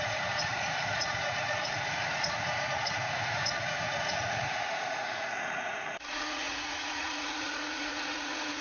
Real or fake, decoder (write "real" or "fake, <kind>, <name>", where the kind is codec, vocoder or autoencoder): fake, vocoder, Vocos